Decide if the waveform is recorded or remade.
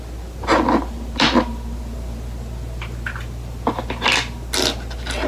recorded